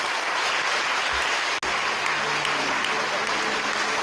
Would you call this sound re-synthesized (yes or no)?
no